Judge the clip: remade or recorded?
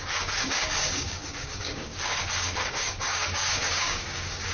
remade